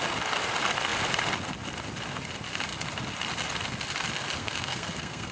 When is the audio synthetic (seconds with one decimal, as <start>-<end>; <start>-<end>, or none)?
4.4-5.3